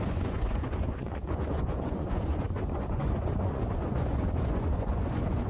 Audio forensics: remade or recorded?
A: remade